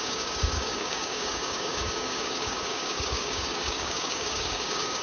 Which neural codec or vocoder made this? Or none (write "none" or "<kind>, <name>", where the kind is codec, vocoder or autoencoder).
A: codec, DAC